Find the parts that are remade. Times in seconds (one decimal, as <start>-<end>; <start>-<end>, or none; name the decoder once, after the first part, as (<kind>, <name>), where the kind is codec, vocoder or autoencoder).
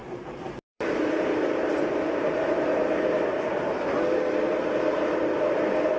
0.0-3.5 (vocoder, BigVGAN v2); 4.1-6.0